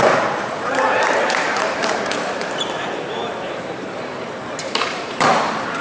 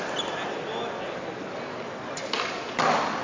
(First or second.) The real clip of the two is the second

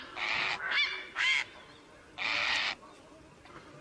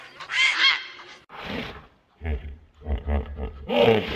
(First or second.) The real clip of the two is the first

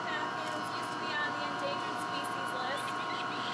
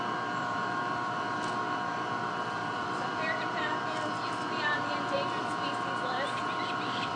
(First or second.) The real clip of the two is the first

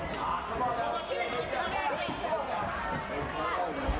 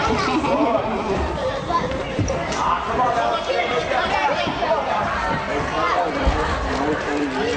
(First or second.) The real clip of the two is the first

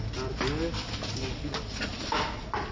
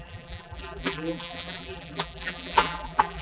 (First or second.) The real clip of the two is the first